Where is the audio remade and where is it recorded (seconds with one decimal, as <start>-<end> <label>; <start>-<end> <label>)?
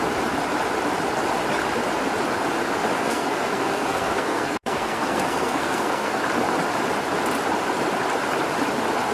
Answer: 0.0-3.0 recorded; 3.0-6.2 remade; 6.2-9.1 recorded